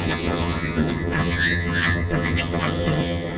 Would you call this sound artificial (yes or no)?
yes